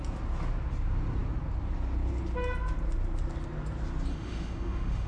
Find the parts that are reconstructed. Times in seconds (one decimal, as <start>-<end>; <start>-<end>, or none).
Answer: 4.1-5.1